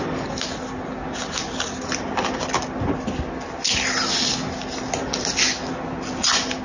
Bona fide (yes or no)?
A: yes